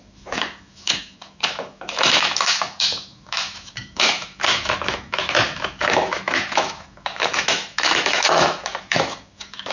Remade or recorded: remade